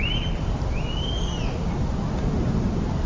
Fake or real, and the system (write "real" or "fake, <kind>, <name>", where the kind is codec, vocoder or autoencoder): real